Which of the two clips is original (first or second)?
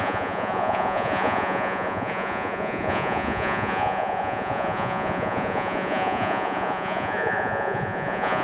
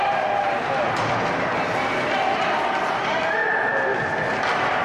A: second